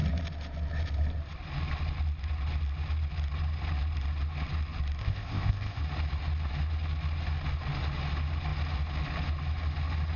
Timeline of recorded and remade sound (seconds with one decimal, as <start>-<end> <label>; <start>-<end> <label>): 0.0-5.0 recorded; 5.0-5.8 remade; 5.8-10.2 recorded